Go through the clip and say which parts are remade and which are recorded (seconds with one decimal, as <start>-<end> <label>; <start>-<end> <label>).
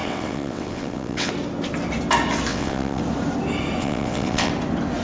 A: 0.0-1.3 remade; 1.3-2.5 recorded; 2.5-3.0 remade; 3.0-3.8 recorded; 3.8-4.5 remade; 4.5-5.0 recorded